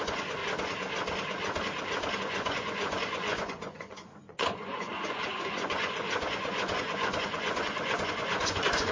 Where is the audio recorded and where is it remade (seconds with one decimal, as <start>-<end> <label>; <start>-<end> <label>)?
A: 0.0-0.4 remade; 0.4-2.2 recorded; 2.2-8.9 remade